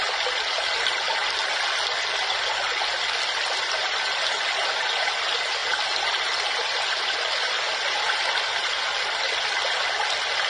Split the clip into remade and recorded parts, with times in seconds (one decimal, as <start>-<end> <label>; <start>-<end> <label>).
0.0-3.8 recorded; 3.8-4.7 remade; 4.7-5.6 recorded; 5.6-9.2 remade; 9.2-10.5 recorded